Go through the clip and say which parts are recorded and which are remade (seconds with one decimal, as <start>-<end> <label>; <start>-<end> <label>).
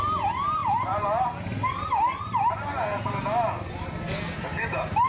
0.0-4.5 recorded; 4.5-5.1 remade